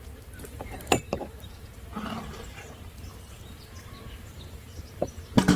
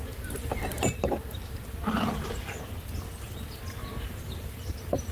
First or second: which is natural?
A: second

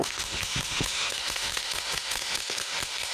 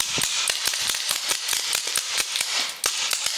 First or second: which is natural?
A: second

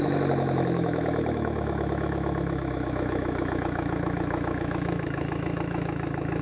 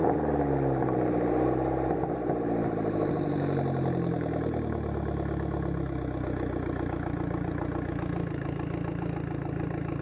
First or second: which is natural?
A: second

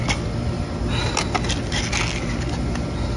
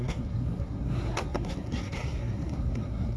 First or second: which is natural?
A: first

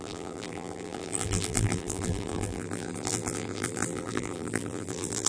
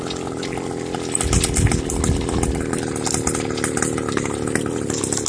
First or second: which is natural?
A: second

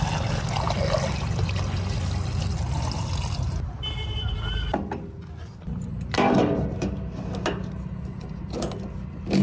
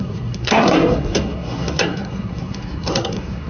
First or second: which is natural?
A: first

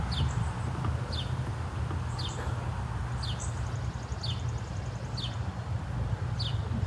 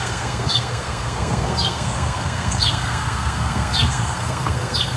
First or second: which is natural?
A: first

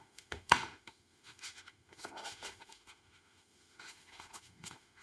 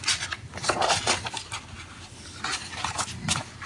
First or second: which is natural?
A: second